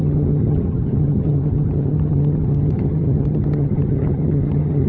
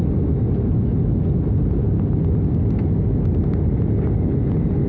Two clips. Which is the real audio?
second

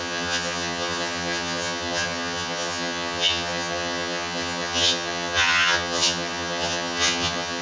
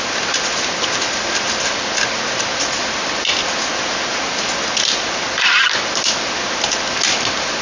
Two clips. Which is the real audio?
second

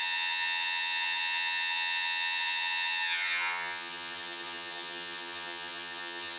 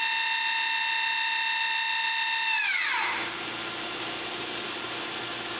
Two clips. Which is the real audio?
second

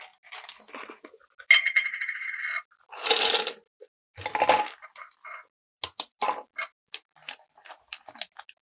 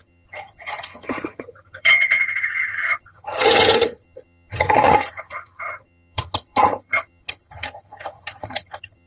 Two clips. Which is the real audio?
first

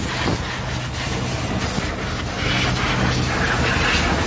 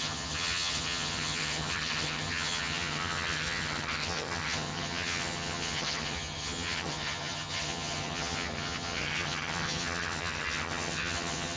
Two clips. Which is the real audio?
first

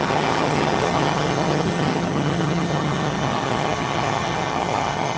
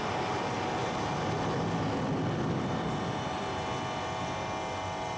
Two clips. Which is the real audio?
second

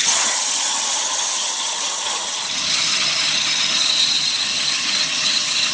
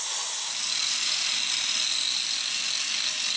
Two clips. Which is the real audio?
second